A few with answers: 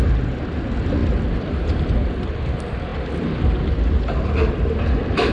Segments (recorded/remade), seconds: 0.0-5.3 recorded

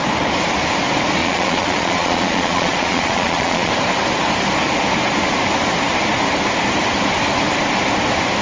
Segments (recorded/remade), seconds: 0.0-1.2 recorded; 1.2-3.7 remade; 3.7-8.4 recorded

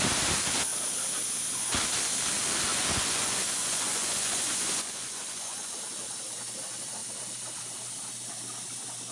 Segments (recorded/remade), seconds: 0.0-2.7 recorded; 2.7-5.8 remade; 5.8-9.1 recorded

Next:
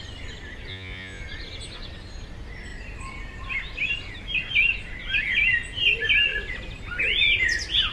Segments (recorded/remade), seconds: 0.0-0.7 recorded; 0.7-1.2 remade; 1.2-7.9 recorded

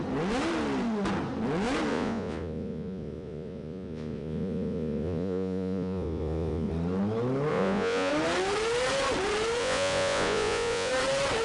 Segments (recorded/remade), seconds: 0.0-1.9 recorded; 1.9-6.7 remade; 6.7-7.5 recorded; 7.5-8.1 remade; 8.1-9.6 recorded; 9.6-10.9 remade; 10.9-11.4 recorded

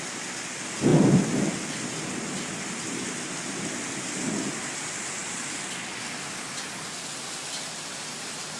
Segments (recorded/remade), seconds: 0.0-8.6 recorded